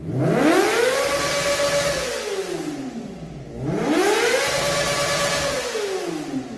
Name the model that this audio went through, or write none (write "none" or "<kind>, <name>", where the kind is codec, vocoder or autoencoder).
none